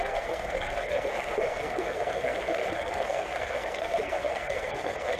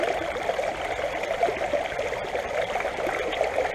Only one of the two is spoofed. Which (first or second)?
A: first